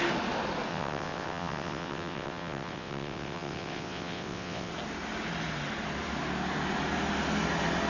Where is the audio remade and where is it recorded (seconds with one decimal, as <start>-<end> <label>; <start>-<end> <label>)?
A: 0.0-0.7 recorded; 0.7-4.7 remade; 4.7-7.9 recorded